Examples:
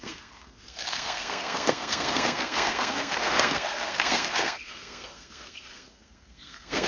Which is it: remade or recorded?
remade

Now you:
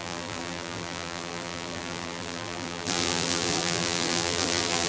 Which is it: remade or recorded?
remade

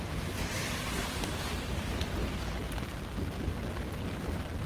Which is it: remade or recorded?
recorded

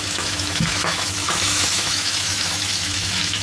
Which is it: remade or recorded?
remade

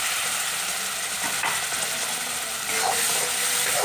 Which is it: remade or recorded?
recorded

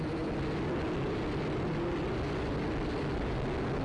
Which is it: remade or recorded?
recorded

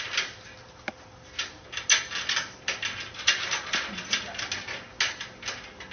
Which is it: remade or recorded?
recorded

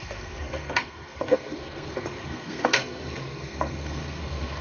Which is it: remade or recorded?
remade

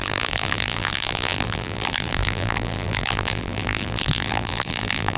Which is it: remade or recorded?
remade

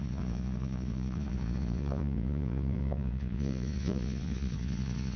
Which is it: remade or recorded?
remade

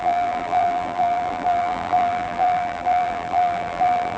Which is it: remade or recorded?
remade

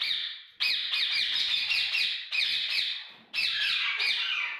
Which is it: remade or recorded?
remade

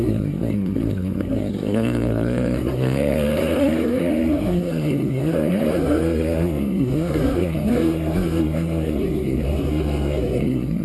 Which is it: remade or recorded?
remade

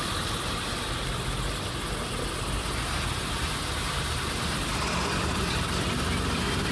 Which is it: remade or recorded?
recorded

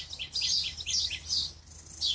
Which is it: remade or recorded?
recorded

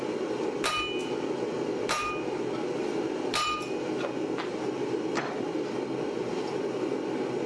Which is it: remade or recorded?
remade